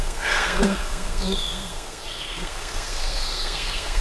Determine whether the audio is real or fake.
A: fake